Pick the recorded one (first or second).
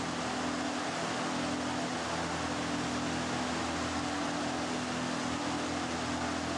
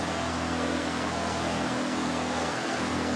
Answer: first